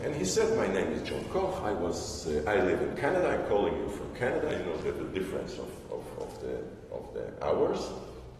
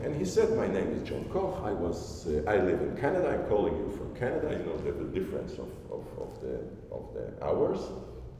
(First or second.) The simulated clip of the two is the second